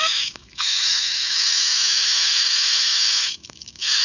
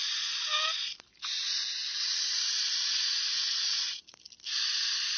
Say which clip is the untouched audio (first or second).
second